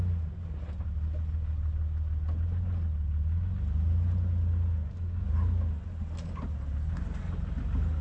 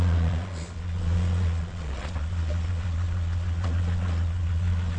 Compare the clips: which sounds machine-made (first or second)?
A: second